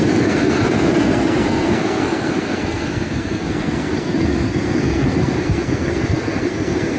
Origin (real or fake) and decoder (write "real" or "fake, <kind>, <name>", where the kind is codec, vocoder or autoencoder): fake, codec, SNAC